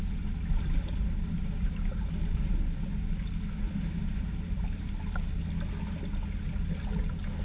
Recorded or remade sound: recorded